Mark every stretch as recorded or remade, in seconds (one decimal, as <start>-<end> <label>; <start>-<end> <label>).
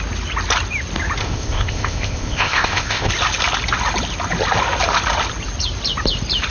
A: 0.0-1.2 recorded; 1.2-3.1 remade; 3.1-6.5 recorded